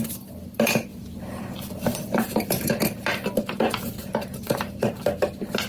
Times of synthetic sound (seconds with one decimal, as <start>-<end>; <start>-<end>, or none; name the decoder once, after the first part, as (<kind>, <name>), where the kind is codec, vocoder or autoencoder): 0.9-2.7 (vocoder, BigVGAN v2); 4.1-4.9